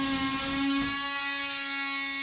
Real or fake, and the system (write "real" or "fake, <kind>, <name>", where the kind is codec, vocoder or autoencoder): real